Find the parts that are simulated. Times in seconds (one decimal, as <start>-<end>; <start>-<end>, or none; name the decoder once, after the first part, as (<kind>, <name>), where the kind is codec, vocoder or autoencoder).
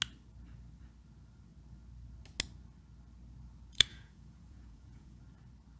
3.9-5.2 (vocoder, Vocos)